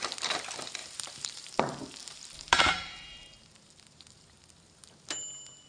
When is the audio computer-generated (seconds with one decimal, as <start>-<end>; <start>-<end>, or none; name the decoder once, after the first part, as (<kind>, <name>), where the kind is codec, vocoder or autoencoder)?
0.8-1.6 (vocoder, BigVGAN v2); 2.0-4.4